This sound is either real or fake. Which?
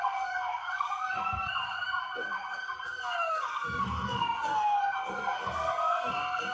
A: fake